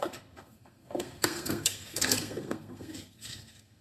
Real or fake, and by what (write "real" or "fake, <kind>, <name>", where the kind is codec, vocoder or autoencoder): fake, codec, SNAC